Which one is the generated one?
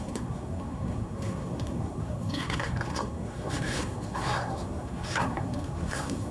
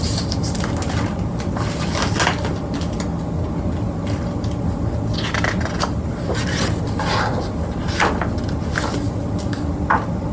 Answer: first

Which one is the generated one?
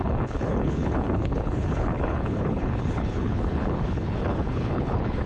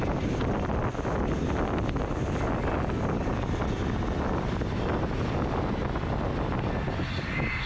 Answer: first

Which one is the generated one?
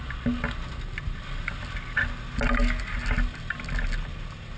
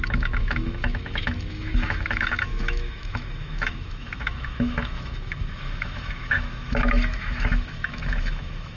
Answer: second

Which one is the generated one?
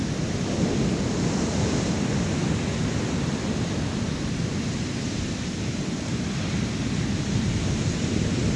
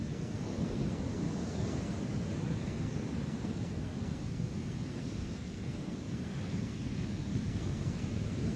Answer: second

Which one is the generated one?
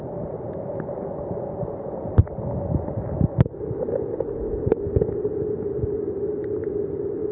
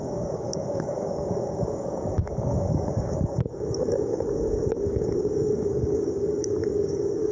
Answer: second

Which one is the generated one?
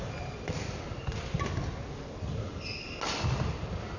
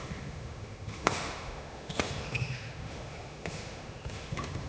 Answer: second